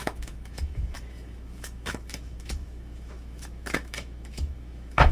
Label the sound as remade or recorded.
remade